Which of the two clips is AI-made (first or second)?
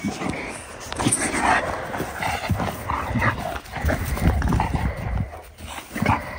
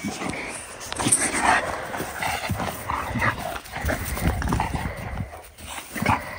second